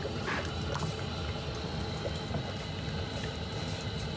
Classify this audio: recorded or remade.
recorded